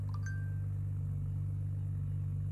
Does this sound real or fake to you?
real